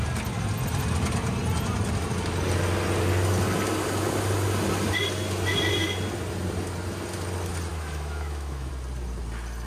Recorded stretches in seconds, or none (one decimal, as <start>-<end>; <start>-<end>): 0.0-7.7; 8.7-9.7